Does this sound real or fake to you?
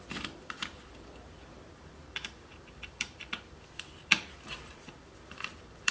fake